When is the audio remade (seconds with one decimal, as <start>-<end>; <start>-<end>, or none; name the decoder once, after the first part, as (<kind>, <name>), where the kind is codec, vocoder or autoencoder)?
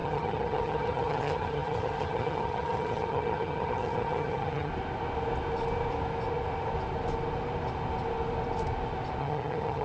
0.0-4.7 (vocoder, HiFi-GAN); 9.2-9.8